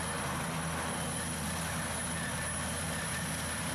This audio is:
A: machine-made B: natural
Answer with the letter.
B